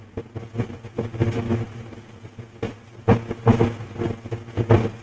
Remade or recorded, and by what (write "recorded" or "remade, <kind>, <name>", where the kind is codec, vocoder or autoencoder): recorded